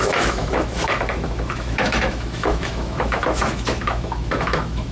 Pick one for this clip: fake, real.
fake